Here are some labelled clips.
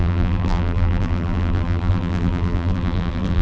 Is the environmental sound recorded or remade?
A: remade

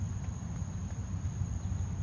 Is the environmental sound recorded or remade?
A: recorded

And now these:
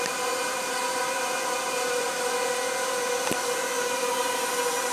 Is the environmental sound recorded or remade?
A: remade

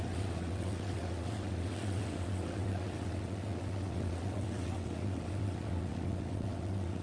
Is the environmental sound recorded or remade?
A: remade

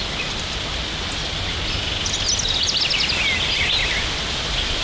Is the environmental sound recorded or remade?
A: recorded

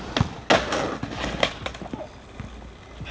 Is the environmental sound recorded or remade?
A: recorded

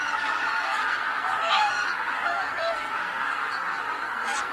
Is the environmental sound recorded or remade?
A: remade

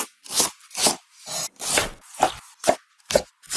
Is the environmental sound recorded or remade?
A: recorded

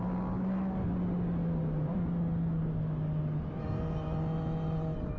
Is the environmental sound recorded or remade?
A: recorded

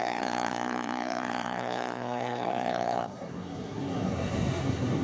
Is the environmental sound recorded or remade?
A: remade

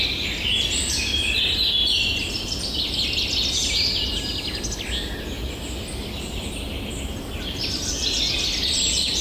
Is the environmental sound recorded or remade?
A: recorded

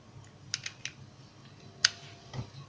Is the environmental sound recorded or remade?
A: recorded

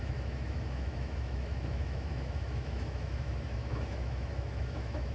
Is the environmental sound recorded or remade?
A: remade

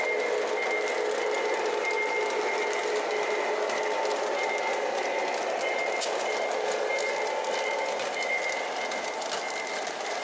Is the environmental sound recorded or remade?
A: recorded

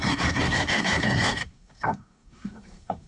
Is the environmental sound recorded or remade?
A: remade